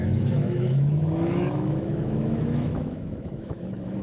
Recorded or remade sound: remade